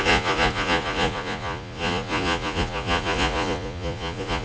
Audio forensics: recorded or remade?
remade